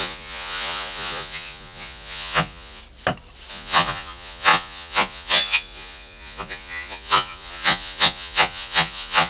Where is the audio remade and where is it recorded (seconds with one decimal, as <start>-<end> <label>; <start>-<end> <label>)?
0.0-2.8 remade; 2.8-3.5 recorded; 3.5-9.3 remade